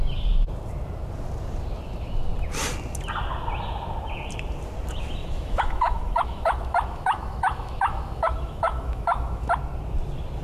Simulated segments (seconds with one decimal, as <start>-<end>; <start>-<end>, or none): 5.2-9.5